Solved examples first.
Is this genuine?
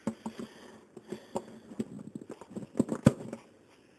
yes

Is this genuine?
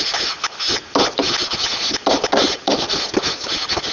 yes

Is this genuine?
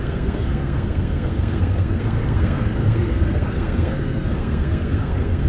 no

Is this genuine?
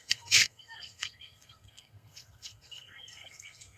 no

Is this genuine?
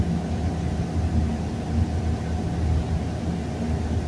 yes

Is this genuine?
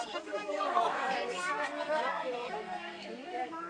no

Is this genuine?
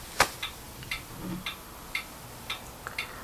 yes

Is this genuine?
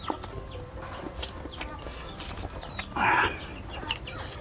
yes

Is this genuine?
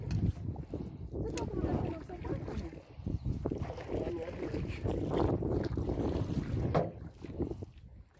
yes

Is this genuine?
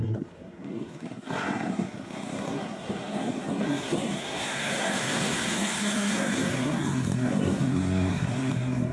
no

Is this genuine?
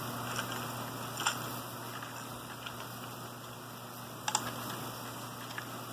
yes